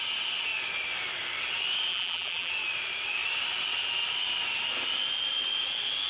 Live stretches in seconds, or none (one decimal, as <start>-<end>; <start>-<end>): 0.0-1.9; 2.5-6.1